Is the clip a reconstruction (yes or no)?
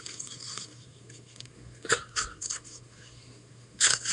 yes